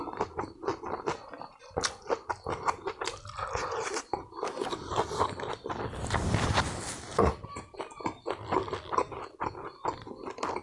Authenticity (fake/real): real